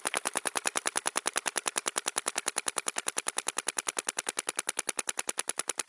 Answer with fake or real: real